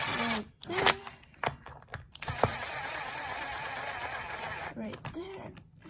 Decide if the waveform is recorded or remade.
remade